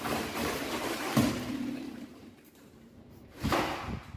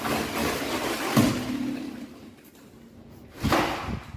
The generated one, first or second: first